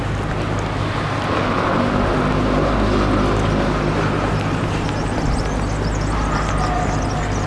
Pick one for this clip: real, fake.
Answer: real